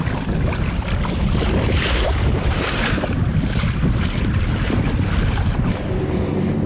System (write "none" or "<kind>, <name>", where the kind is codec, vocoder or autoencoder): none